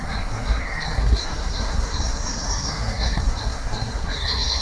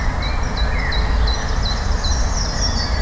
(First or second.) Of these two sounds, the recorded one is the second